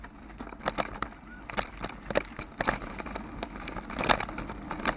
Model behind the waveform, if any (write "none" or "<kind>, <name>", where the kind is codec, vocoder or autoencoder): none